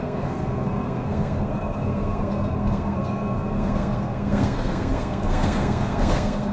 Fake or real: fake